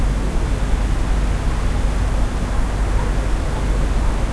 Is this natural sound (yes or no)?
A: yes